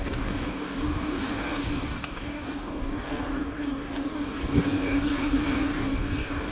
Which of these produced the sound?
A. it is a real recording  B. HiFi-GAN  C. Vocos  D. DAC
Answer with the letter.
D